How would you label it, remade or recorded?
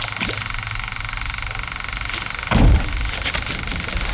recorded